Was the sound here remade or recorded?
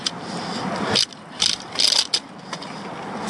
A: recorded